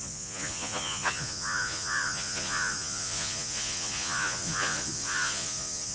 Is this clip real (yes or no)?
no